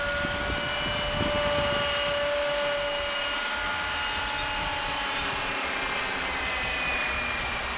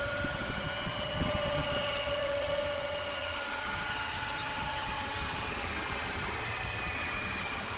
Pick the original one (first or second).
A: first